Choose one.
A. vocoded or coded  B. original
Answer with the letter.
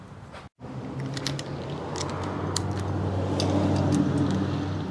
B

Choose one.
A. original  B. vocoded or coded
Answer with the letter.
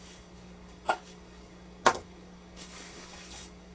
B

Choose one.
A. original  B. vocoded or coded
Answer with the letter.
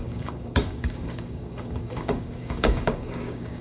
B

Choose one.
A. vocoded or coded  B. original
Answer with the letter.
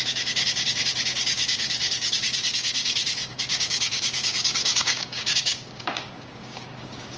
A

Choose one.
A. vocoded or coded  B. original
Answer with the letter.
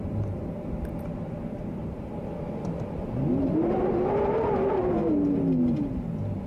B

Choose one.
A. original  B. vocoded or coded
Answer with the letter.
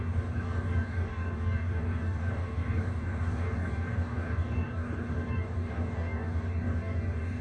B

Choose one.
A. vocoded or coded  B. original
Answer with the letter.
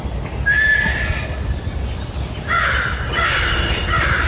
B